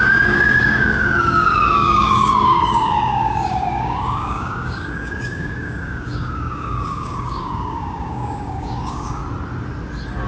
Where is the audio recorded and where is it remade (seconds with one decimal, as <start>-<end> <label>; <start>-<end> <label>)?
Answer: 0.0-9.2 remade; 9.2-10.3 recorded